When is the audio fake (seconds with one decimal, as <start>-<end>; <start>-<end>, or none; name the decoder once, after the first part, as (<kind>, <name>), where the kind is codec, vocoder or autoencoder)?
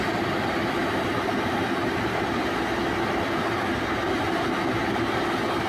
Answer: none